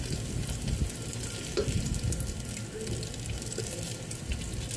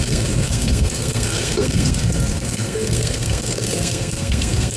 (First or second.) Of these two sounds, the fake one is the second